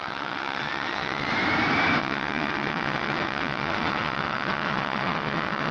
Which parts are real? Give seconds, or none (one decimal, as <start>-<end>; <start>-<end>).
1.3-2.0